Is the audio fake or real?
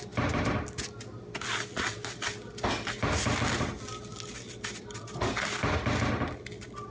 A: real